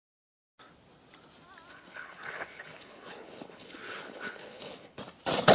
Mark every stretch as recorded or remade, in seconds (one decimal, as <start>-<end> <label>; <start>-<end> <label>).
0.0-1.7 recorded; 1.7-5.0 remade; 5.0-5.5 recorded

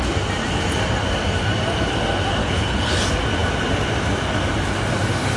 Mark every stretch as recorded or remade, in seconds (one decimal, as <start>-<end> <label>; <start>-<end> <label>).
0.0-2.4 recorded; 2.4-2.9 remade; 2.9-5.4 recorded

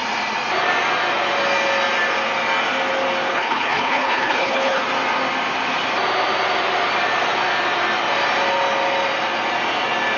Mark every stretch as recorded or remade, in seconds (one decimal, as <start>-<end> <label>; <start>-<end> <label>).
0.0-3.3 recorded; 3.3-4.8 remade; 4.8-10.2 recorded

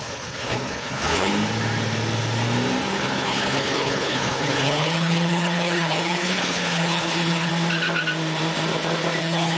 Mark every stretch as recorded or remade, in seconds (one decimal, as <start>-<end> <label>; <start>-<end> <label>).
0.0-1.3 remade; 1.3-2.9 recorded; 2.9-7.5 remade; 7.5-9.2 recorded; 9.2-9.6 remade